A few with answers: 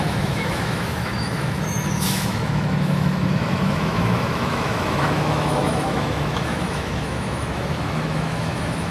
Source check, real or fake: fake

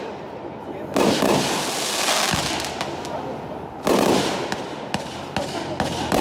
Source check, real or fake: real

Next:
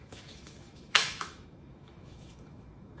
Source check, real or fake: fake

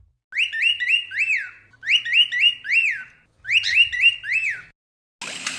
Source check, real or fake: real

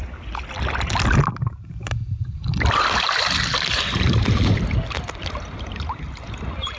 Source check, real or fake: real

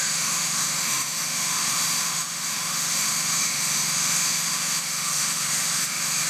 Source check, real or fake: fake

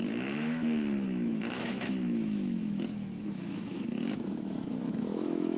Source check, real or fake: fake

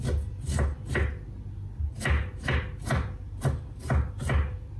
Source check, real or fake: real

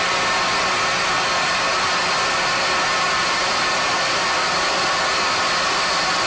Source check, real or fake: real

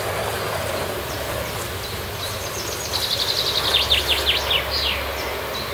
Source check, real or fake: real